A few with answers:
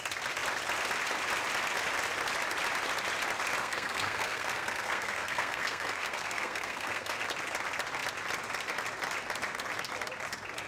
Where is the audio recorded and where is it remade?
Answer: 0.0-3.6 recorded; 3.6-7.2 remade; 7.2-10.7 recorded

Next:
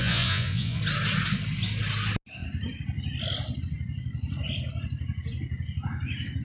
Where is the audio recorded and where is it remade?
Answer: 0.0-0.8 remade; 0.8-6.4 recorded

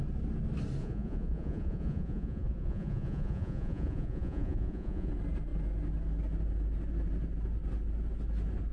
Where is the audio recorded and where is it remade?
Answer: 0.0-0.8 recorded; 0.8-5.1 remade; 5.1-8.7 recorded